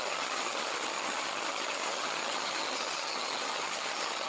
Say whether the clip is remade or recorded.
remade